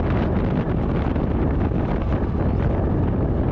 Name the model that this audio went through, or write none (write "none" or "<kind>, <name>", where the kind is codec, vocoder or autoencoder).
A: none